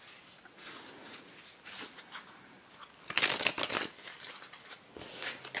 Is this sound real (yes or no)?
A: yes